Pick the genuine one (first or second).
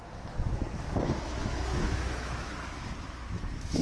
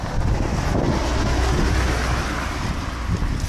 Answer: second